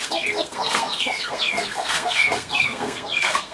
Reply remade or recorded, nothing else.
remade